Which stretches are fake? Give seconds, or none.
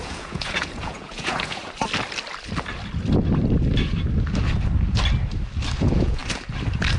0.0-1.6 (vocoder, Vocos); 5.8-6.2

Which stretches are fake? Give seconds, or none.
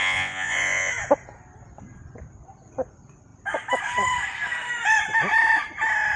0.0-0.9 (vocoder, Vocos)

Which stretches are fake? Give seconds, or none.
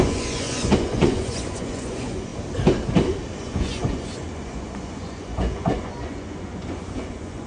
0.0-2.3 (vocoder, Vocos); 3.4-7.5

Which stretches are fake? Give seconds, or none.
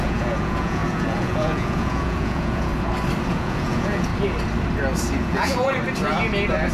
0.0-2.7 (vocoder, Vocos); 3.3-4.1; 5.2-5.8